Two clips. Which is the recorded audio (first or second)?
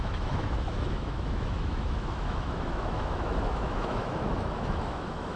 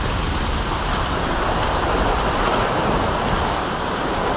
second